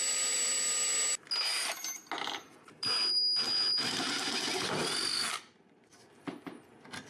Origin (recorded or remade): recorded